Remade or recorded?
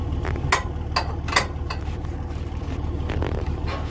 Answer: recorded